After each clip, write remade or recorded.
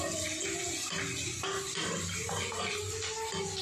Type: recorded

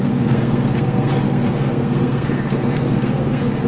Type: remade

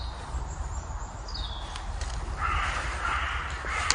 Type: recorded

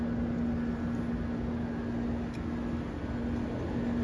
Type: recorded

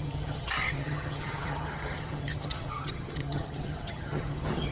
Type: remade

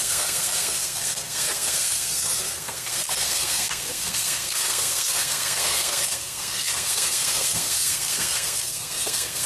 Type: remade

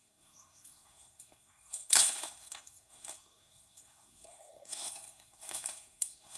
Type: remade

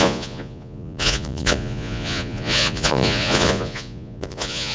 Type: remade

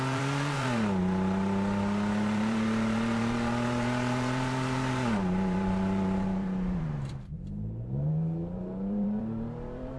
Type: remade